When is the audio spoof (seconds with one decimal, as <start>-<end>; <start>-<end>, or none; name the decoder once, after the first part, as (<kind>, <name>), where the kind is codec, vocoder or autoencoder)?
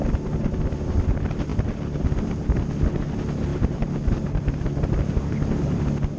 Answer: none